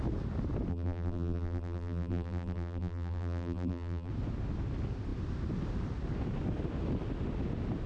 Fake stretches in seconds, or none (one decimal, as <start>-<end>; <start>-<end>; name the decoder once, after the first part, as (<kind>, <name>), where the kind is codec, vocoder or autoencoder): 0.7-4.1 (vocoder, BigVGAN v2)